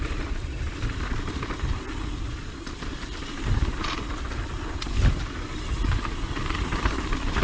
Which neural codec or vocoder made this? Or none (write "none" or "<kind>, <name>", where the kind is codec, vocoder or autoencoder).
none